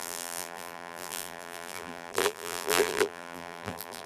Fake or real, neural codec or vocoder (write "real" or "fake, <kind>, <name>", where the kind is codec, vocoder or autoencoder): fake, vocoder, BigVGAN v2